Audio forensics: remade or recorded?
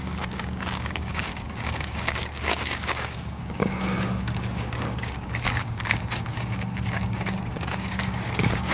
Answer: remade